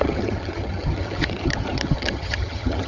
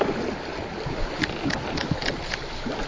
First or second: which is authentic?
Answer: second